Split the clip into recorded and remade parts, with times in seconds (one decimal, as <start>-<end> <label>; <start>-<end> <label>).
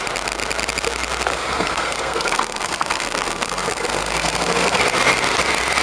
0.0-1.3 recorded; 1.3-4.8 remade; 4.8-5.8 recorded